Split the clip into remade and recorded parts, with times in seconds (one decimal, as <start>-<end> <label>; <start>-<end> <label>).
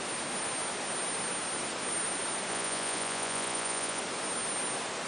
0.0-2.5 recorded; 2.5-4.0 remade; 4.0-5.1 recorded